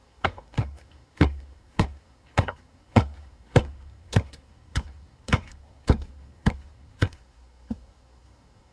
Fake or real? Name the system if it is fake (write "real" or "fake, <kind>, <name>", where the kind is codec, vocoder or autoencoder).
fake, codec, SNAC